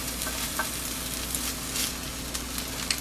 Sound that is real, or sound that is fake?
real